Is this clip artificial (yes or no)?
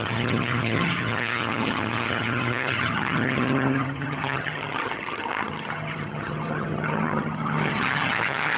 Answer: yes